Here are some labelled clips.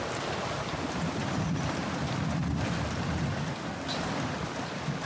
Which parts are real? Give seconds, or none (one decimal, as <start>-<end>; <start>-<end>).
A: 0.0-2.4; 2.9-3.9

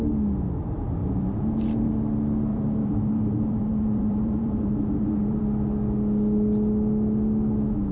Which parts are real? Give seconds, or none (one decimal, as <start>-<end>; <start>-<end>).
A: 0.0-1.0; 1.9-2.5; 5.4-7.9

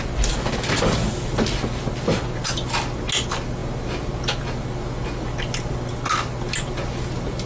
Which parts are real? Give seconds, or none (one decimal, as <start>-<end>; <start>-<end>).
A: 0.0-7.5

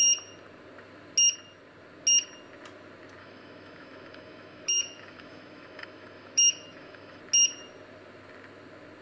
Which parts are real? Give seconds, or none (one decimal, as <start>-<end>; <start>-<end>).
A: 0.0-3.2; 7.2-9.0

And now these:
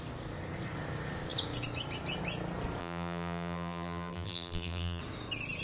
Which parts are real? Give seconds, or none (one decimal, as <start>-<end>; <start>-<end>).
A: 0.0-2.8; 5.0-5.6